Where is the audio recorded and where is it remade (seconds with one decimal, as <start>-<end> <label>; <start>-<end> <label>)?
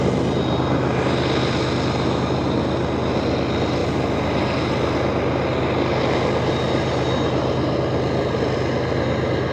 0.0-9.5 recorded